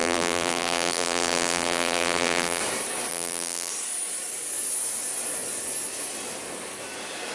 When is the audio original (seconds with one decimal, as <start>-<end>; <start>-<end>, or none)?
2.6-3.1; 3.7-7.3